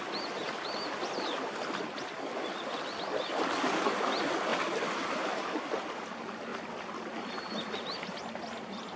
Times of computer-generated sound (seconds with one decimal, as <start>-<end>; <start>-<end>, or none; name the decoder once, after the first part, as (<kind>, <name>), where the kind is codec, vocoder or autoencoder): none